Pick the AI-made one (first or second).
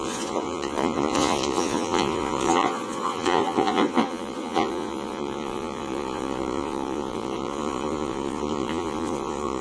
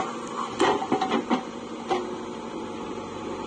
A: first